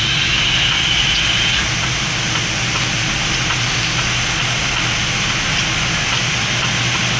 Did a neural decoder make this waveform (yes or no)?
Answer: no